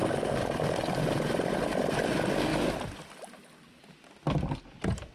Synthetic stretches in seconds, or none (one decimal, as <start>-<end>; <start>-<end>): none

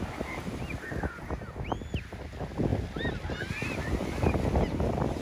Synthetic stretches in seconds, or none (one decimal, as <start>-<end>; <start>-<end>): none

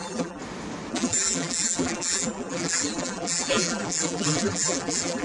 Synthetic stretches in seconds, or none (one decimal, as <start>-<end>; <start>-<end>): 0.0-0.4; 0.9-5.2